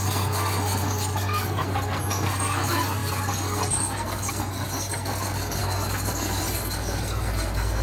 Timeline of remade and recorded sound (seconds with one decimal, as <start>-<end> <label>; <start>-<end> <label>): 0.0-7.8 remade